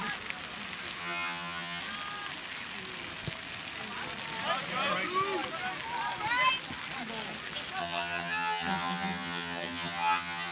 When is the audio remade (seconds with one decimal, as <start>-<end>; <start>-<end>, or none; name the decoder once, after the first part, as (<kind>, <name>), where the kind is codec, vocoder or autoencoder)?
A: 1.0-1.8 (vocoder, HiFi-GAN); 7.8-10.5